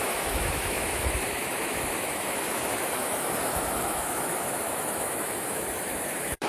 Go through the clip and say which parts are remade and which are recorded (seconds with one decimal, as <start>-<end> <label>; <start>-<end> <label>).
0.0-6.5 remade